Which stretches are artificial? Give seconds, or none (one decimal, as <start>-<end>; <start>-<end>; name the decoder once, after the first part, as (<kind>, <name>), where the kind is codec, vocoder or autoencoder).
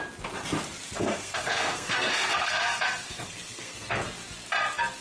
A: 1.0-4.0 (codec, SNAC)